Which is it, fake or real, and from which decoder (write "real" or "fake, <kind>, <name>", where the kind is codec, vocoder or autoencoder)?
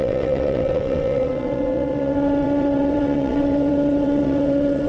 fake, vocoder, WaveNeXt